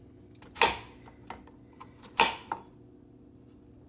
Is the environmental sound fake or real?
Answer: real